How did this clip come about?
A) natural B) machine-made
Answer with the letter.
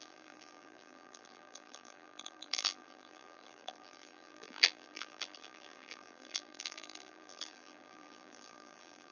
B